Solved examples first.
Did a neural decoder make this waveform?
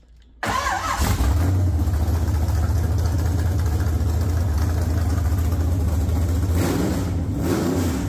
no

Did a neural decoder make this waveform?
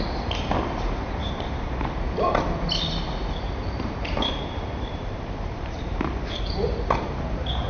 yes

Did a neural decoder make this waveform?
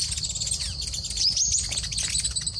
no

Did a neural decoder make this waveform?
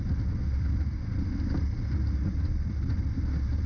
no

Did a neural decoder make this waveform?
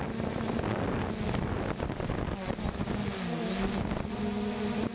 no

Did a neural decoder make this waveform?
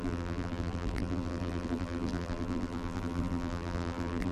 yes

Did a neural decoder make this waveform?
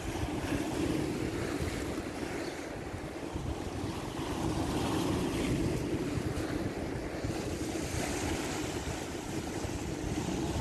no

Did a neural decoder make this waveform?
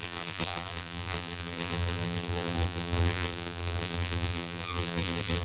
yes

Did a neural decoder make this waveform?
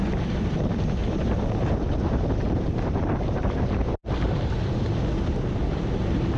yes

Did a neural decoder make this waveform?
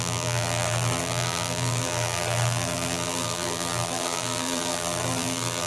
yes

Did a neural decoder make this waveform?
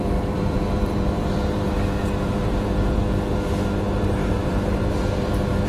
yes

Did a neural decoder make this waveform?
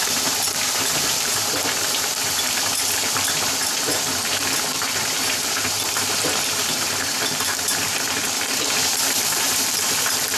yes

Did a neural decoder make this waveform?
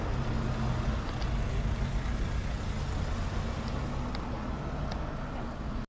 no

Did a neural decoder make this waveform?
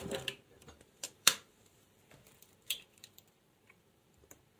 yes